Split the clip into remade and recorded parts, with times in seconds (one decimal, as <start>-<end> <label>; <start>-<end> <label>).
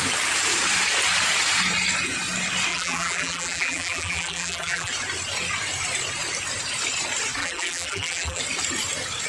0.0-2.7 recorded; 2.7-4.9 remade; 4.9-7.4 recorded; 7.4-8.4 remade; 8.4-9.3 recorded